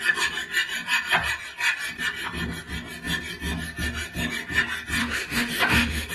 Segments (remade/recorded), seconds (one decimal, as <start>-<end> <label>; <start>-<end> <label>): 0.0-5.0 recorded; 5.0-6.1 remade